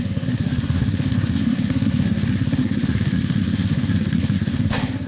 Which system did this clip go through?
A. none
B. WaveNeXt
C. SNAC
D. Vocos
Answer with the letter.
C